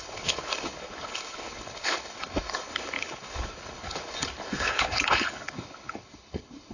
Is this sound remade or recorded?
remade